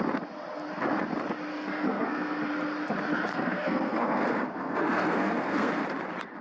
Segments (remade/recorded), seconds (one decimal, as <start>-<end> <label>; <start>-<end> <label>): 0.0-1.5 recorded; 1.5-2.4 remade; 2.4-3.3 recorded; 3.3-5.7 remade; 5.7-6.4 recorded